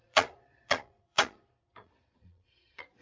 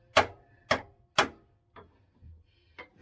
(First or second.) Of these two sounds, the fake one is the first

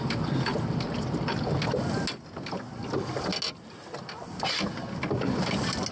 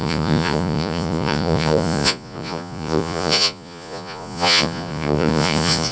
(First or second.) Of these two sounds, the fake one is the second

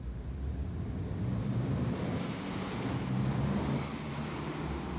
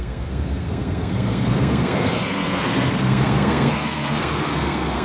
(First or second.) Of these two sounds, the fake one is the second